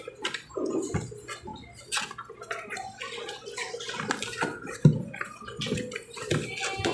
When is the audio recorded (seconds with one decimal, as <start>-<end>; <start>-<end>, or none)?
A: 0.0-6.9